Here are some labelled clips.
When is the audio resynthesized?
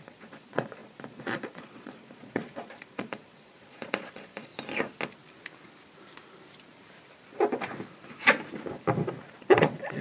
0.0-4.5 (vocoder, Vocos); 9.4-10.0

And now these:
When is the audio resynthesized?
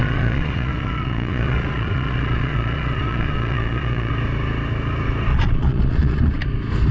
0.0-4.1 (vocoder, Vocos); 5.3-6.4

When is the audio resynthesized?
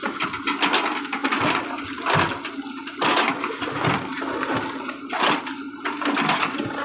none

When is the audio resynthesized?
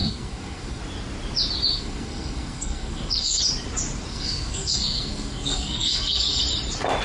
0.0-0.8 (codec, SNAC); 1.7-3.4; 4.1-6.4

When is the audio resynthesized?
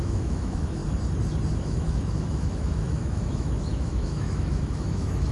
0.0-0.8 (autoencoder, DAC-VAE); 1.6-5.3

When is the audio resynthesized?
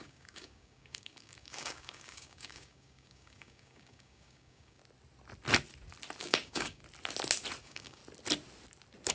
0.0-4.8 (codec, DAC); 6.2-6.8; 7.6-8.0